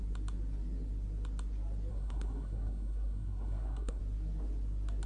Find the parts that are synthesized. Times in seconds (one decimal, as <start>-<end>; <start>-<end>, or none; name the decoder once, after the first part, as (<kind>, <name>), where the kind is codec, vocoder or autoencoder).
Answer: 1.9-4.0 (codec, SNAC)